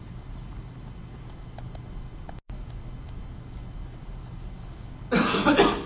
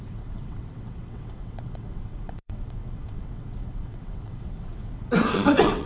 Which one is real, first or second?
first